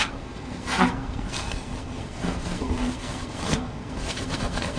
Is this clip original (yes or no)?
no